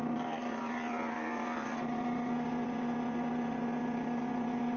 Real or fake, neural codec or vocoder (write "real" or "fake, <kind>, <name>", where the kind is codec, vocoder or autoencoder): real